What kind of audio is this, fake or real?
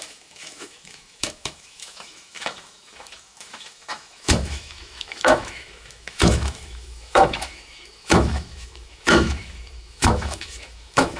fake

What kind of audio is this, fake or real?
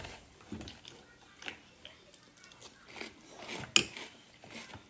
real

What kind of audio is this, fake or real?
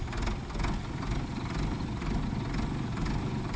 real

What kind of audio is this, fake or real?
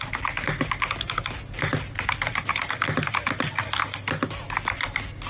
real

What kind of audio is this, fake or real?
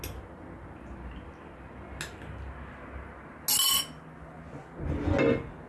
real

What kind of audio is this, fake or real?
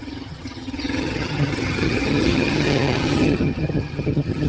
fake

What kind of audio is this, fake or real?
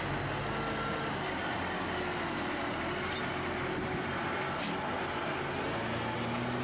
real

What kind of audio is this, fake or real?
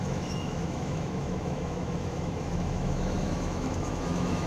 fake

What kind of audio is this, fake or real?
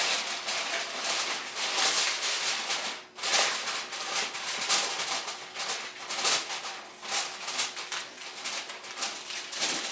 real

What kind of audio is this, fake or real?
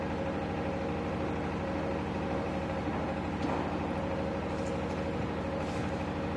real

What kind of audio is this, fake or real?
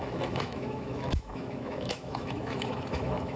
fake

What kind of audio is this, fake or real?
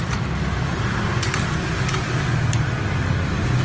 real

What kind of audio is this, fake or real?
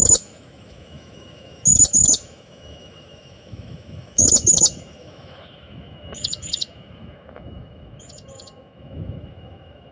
fake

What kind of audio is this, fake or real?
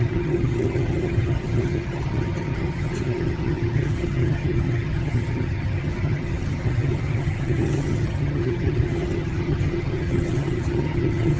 fake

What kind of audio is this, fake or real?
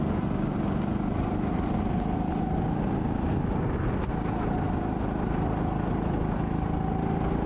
real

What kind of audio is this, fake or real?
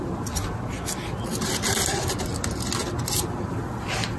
real